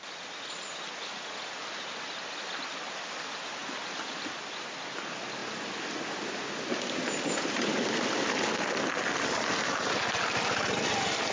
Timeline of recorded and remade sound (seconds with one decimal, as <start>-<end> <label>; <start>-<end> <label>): 0.0-11.3 recorded